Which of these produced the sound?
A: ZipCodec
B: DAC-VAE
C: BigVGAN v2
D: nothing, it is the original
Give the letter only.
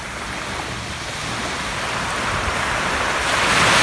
D